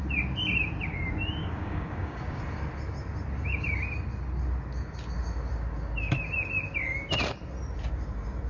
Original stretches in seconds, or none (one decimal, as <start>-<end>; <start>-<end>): 0.0-1.4; 2.4-8.5